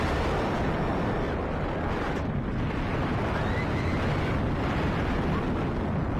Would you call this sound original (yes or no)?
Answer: yes